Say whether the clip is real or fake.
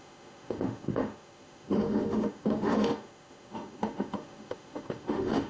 fake